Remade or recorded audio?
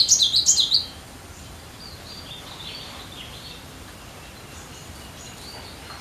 remade